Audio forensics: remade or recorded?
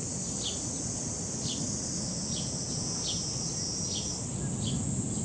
recorded